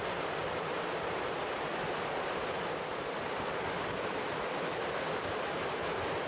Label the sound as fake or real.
real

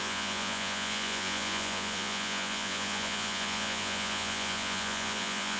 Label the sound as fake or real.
fake